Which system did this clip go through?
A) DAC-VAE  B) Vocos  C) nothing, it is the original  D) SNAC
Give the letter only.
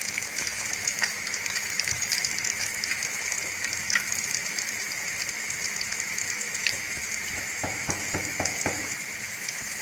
A